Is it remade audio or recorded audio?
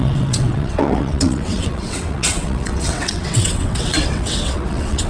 remade